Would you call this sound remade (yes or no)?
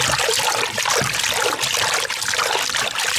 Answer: no